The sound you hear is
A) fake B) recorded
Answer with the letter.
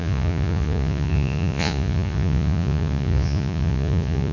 A